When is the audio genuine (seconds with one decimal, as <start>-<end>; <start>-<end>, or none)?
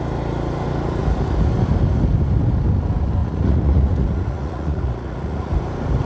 0.0-3.2; 5.5-6.0